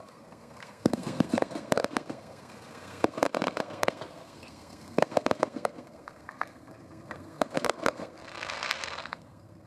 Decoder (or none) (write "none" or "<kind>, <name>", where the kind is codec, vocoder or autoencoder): codec, SNAC